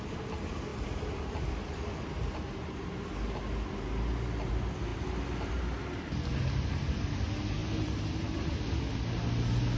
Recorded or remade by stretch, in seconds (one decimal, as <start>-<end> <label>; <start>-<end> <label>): 0.0-7.6 recorded; 7.6-9.1 remade; 9.1-9.8 recorded